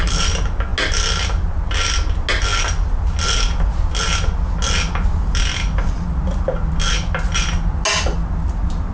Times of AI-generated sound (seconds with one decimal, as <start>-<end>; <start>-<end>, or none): none